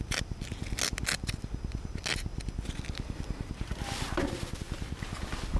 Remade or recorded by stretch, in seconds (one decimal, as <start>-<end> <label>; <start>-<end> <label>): 0.0-5.6 recorded